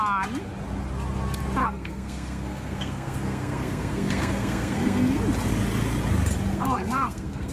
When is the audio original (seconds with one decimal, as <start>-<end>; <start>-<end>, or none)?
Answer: 0.0-1.6; 5.2-6.5